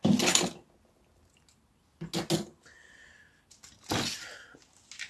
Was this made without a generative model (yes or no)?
yes